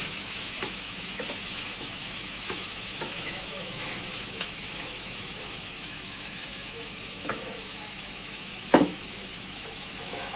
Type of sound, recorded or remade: remade